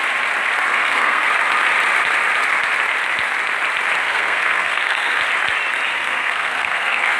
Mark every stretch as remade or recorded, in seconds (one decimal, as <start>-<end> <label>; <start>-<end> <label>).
0.0-0.7 recorded; 0.7-1.3 remade; 1.3-4.0 recorded; 4.0-5.2 remade; 5.2-5.9 recorded; 5.9-7.2 remade